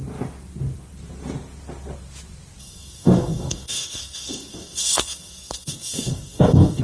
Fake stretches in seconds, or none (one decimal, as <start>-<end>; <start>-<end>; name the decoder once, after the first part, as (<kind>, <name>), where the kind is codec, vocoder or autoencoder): 2.6-6.8 (codec, SNAC)